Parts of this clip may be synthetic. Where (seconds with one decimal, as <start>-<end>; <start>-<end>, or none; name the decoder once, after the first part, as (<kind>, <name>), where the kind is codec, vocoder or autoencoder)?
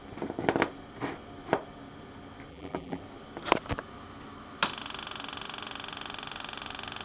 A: 2.5-3.0 (vocoder, BigVGAN v2)